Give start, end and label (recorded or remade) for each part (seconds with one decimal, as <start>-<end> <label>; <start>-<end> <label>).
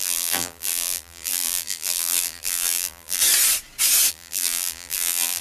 0.0-3.2 remade; 3.2-4.1 recorded; 4.1-5.4 remade